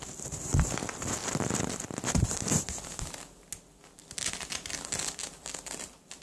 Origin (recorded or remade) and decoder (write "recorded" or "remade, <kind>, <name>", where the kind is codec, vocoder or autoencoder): recorded